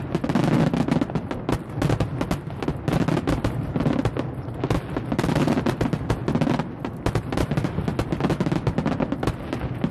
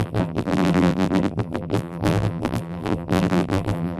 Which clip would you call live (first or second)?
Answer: first